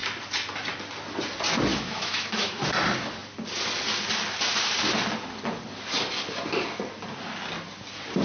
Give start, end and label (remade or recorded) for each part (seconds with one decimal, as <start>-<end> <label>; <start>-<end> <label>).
0.0-1.7 recorded; 1.7-2.6 remade; 2.6-8.2 recorded